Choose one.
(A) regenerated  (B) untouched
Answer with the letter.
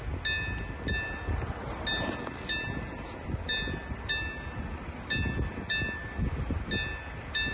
B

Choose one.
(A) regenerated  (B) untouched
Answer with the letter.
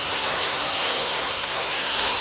A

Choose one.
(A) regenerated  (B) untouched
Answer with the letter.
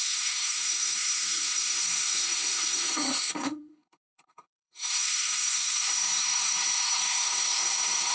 A